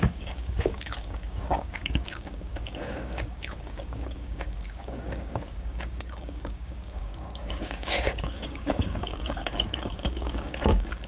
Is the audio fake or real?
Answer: fake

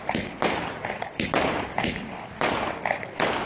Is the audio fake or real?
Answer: real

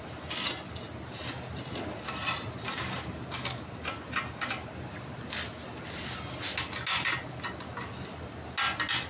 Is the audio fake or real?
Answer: real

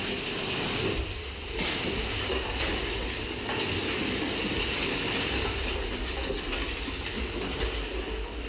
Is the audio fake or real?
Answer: real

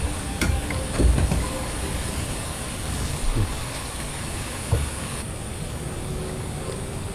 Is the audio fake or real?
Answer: fake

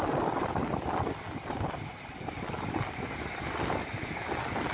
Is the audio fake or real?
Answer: real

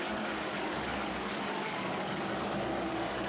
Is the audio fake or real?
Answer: fake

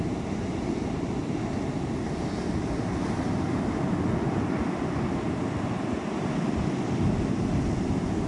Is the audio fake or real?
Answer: real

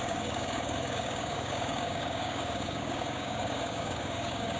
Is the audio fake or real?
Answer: fake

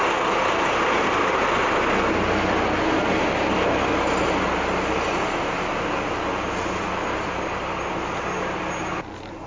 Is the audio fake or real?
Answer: real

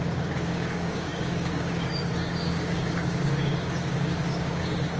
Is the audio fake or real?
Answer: fake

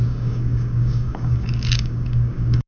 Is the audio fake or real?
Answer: fake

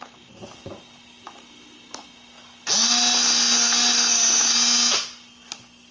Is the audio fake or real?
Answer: real